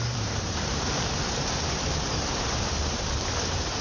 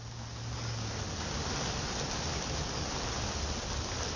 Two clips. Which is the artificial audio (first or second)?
first